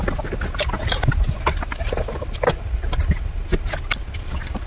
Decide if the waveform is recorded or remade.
recorded